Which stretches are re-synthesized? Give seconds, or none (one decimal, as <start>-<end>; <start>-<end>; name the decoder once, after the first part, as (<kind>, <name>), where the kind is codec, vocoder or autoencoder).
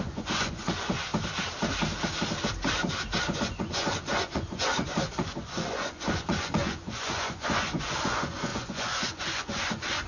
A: 0.0-1.1 (vocoder, Vocos); 3.2-10.1